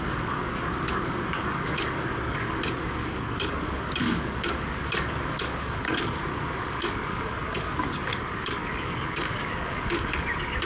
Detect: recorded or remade remade